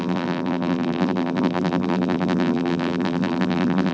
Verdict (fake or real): fake